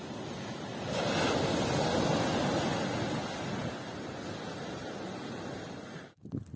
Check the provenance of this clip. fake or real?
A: real